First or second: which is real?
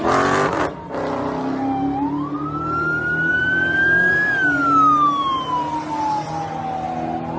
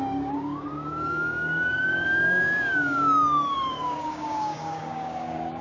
first